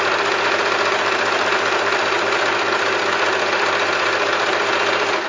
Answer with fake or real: real